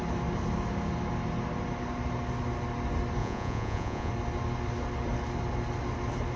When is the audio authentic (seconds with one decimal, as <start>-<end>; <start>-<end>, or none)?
0.0-3.2; 4.1-6.4